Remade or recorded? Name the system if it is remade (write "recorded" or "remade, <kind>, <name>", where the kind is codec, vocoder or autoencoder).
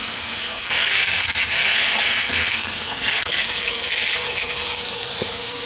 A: remade, codec, SNAC